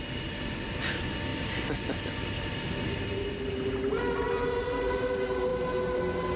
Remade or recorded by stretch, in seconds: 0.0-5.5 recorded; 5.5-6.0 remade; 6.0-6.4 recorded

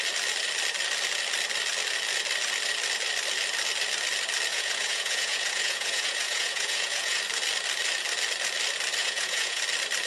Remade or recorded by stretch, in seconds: 0.0-4.5 recorded; 4.5-7.2 remade; 7.2-9.0 recorded; 9.0-9.6 remade; 9.6-10.1 recorded

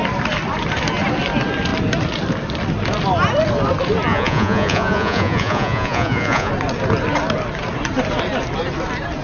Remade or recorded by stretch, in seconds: 0.0-4.1 recorded; 4.1-6.5 remade; 6.5-9.2 recorded

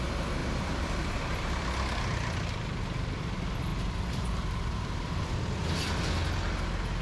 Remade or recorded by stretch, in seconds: 0.0-0.4 recorded; 0.4-2.4 remade; 2.4-3.7 recorded; 3.7-5.6 remade; 5.6-7.0 recorded

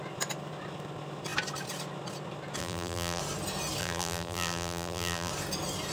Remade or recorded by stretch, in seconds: 0.0-2.6 recorded; 2.6-3.2 remade; 3.2-3.8 recorded; 3.8-5.3 remade; 5.3-5.9 recorded

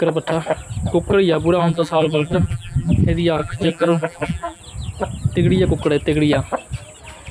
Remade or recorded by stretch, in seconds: 0.0-1.6 recorded; 1.6-2.9 remade; 2.9-3.4 recorded; 3.4-4.6 remade; 4.6-7.3 recorded

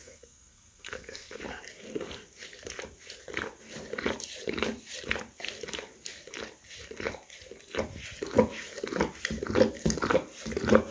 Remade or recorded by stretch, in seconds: 0.0-1.4 remade; 1.4-10.9 recorded

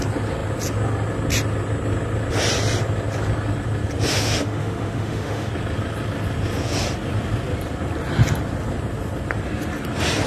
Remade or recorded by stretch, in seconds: 0.0-4.1 recorded; 4.1-5.5 remade; 5.5-10.3 recorded